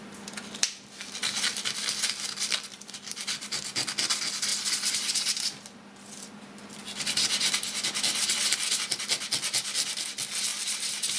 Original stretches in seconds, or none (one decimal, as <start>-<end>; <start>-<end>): 0.0-1.2; 3.3-10.5